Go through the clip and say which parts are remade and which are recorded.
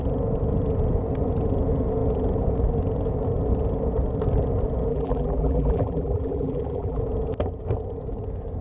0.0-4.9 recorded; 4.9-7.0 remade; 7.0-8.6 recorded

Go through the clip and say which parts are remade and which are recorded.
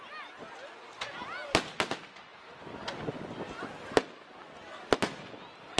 0.0-5.8 recorded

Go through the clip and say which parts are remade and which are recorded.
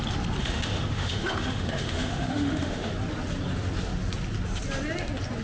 0.0-0.4 recorded; 0.4-2.9 remade; 2.9-5.4 recorded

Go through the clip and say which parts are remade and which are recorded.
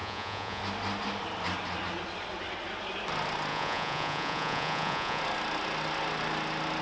0.0-0.6 remade; 0.6-3.5 recorded; 3.5-5.2 remade; 5.2-6.8 recorded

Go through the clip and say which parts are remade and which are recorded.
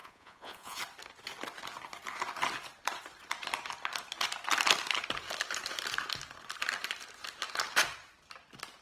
0.0-0.8 remade; 0.8-8.8 recorded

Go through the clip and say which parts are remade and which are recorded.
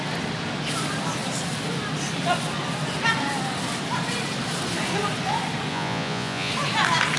0.0-5.7 recorded; 5.7-6.5 remade; 6.5-7.2 recorded